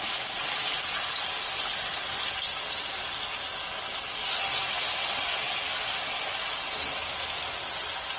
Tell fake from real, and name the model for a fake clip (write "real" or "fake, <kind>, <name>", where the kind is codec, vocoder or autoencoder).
real